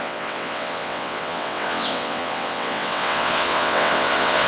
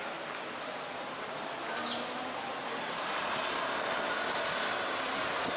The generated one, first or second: first